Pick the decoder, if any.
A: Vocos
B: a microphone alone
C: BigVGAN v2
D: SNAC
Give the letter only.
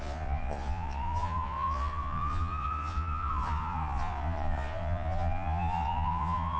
A